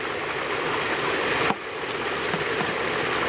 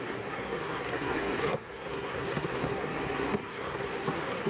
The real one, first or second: first